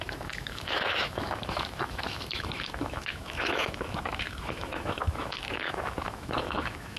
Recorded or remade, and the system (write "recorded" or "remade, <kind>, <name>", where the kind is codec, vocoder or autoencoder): remade, autoencoder, DAC-VAE